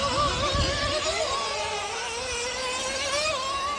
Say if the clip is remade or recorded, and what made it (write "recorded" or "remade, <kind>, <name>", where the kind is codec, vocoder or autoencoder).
recorded